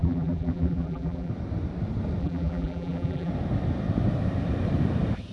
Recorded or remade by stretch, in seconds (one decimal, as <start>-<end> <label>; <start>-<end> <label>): 0.0-1.3 remade; 1.3-2.2 recorded; 2.2-3.3 remade; 3.3-5.3 recorded